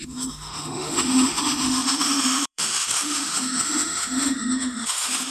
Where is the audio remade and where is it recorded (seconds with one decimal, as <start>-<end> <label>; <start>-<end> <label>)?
0.0-5.3 remade